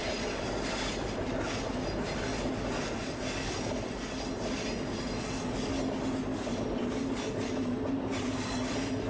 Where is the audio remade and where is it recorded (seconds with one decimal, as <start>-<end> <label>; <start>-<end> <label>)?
0.0-9.1 recorded